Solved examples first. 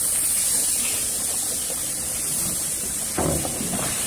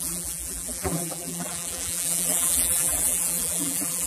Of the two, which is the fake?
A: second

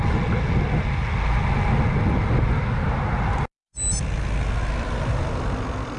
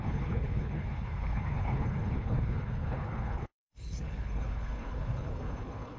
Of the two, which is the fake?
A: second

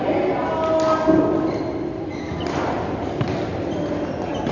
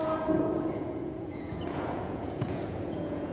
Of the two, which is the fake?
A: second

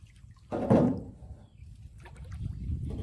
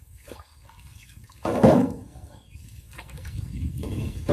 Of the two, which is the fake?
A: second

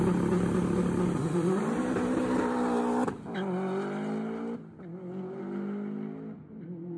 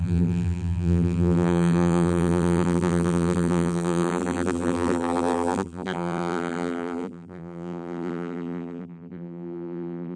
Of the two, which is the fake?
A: second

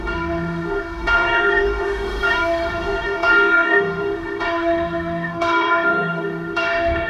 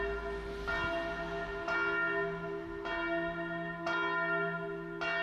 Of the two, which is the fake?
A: first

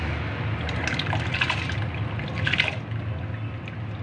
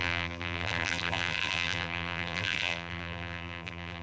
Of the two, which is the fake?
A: second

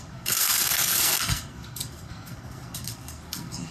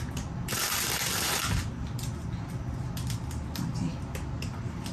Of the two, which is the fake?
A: first